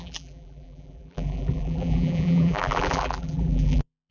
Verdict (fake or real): fake